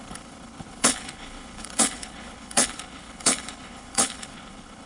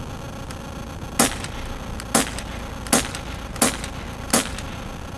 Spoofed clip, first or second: first